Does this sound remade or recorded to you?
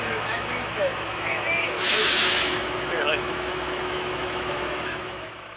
remade